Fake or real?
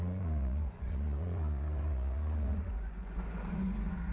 fake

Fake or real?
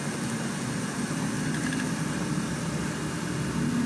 real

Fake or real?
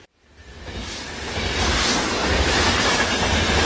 real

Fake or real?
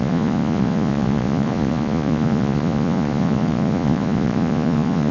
fake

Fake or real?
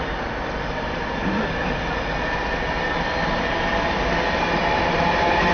real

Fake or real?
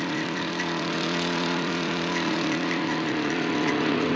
fake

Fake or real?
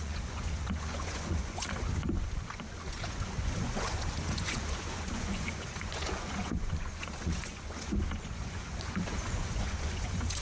fake